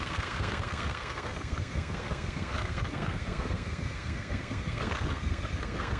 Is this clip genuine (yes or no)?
no